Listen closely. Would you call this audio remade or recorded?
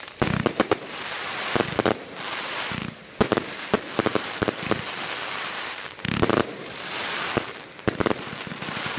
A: remade